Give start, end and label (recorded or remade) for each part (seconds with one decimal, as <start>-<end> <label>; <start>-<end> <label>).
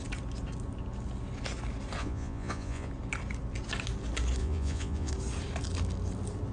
0.0-2.0 recorded; 2.0-2.9 remade; 2.9-4.4 recorded; 4.4-5.1 remade; 5.1-6.5 recorded